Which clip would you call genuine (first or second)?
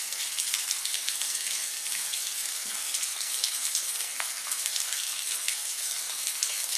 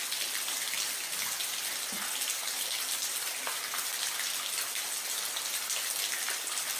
second